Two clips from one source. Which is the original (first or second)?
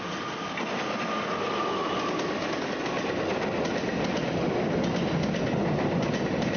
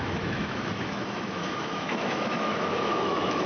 first